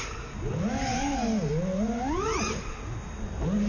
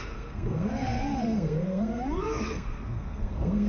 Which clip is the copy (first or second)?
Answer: second